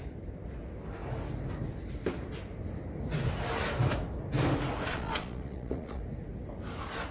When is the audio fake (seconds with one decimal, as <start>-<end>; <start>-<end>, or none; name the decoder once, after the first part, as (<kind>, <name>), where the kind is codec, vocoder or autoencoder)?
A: 4.9-6.0 (vocoder, Vocos)